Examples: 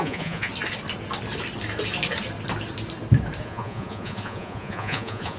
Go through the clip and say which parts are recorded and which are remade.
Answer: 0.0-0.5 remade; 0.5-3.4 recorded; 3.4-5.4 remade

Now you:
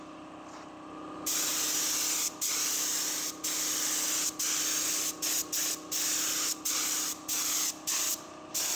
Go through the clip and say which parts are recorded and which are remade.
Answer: 0.0-8.8 recorded